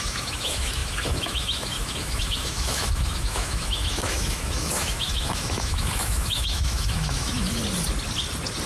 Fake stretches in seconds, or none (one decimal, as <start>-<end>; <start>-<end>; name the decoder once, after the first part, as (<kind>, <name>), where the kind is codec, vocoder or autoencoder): 0.0-7.6 (autoencoder, DAC-VAE)